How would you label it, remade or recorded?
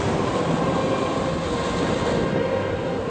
recorded